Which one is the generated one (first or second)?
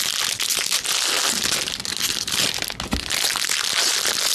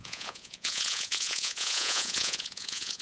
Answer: second